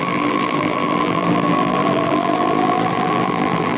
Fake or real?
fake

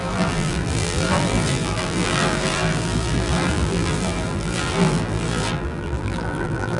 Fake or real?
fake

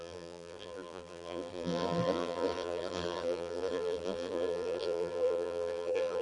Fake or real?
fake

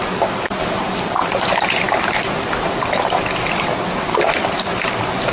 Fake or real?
fake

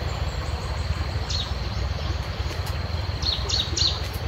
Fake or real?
real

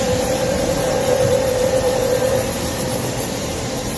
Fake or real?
fake